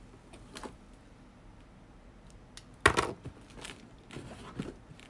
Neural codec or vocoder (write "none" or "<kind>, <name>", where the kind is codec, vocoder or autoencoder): none